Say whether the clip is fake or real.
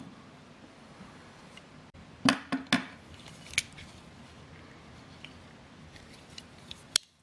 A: real